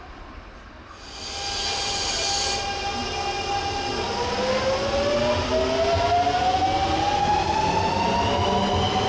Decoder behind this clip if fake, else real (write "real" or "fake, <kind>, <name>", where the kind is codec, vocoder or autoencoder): real